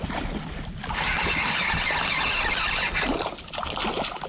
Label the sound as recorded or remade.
recorded